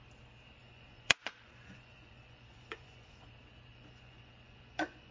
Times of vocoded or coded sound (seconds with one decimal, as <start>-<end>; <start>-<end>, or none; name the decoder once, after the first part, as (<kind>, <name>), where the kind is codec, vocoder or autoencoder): 0.6-3.3 (vocoder, Vocos); 3.7-5.1